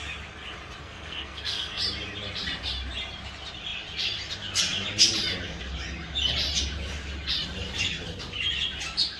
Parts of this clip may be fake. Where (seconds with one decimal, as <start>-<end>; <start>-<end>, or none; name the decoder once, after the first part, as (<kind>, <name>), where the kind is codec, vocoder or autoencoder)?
0.8-1.8 (codec, SNAC)